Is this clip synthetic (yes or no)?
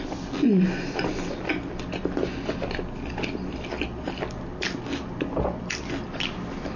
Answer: no